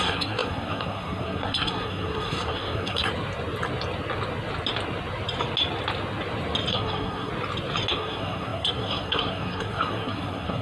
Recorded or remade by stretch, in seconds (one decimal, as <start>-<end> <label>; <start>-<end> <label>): 0.0-3.1 remade; 3.1-6.7 recorded; 6.7-7.3 remade; 7.3-7.9 recorded; 7.9-10.6 remade